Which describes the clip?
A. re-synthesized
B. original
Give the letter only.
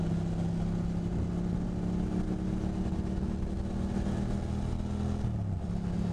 B